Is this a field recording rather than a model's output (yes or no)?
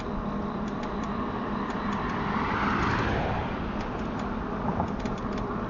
no